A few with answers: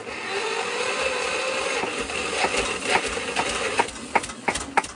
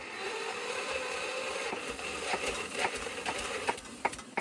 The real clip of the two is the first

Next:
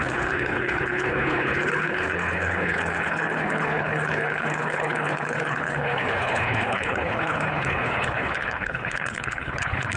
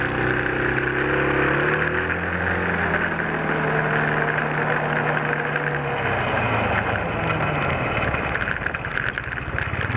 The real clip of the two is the second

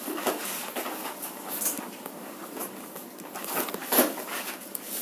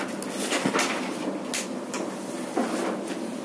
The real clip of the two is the second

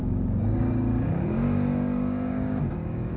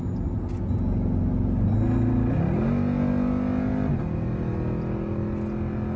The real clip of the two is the second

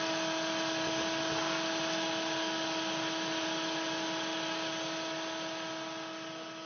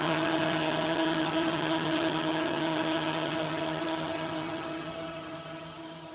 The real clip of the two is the first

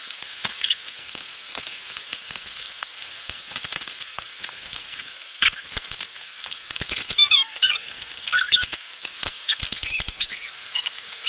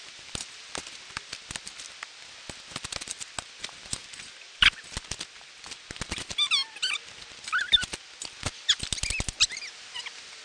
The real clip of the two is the second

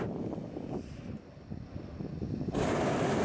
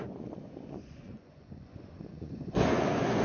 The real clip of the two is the first